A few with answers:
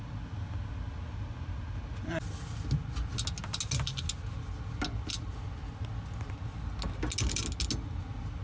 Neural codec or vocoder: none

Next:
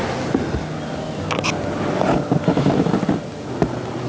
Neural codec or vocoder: none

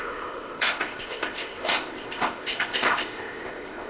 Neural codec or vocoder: codec, ZipCodec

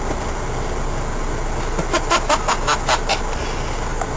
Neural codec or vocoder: none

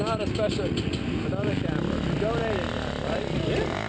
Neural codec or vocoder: none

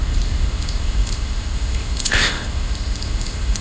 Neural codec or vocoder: codec, ZipCodec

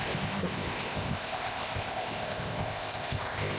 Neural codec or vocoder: codec, ZipCodec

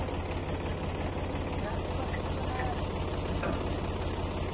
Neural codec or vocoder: none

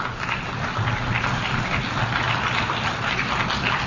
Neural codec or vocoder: none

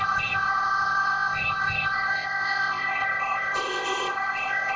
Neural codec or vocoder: codec, ZipCodec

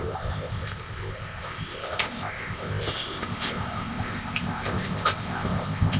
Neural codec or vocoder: codec, ZipCodec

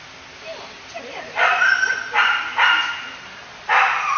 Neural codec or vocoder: none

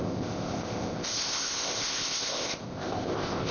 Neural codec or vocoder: codec, ZipCodec